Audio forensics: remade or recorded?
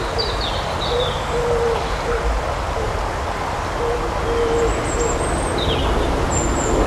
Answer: recorded